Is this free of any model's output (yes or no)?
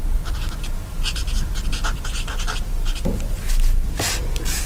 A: yes